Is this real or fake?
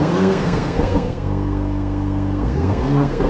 fake